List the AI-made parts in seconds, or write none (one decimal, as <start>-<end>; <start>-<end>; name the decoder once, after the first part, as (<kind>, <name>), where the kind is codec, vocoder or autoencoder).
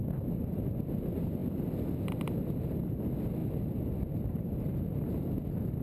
3.4-3.9 (vocoder, BigVGAN v2)